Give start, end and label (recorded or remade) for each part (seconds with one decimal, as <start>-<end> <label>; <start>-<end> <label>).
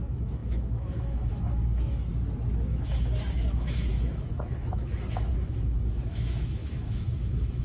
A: 0.0-2.1 remade; 2.1-2.7 recorded; 2.7-7.6 remade